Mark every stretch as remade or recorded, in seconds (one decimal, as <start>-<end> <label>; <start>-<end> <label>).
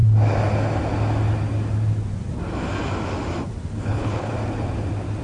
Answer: 0.0-3.8 recorded; 3.8-4.3 remade; 4.3-5.2 recorded